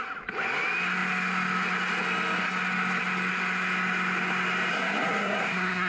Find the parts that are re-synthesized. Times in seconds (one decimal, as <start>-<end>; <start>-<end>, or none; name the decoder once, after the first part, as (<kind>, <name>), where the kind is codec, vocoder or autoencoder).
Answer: 4.7-5.9 (codec, SNAC)